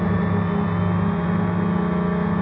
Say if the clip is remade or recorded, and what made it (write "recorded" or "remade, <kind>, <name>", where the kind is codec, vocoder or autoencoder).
recorded